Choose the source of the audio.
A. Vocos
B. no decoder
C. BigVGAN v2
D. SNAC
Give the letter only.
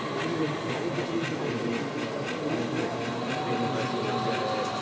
B